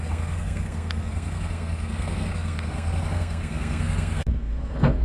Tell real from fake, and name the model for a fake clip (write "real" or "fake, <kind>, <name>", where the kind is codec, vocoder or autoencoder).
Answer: fake, codec, SNAC